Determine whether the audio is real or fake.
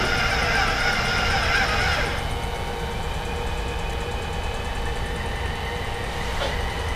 real